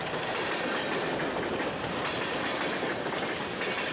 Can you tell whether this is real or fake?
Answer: real